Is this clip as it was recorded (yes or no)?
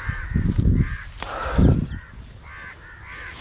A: yes